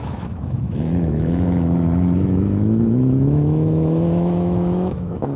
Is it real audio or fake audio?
fake